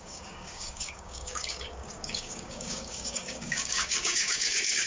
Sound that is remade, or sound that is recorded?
remade